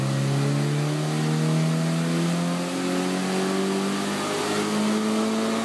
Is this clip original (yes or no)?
yes